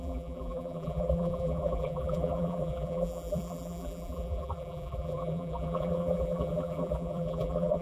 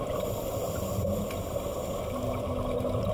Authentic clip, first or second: second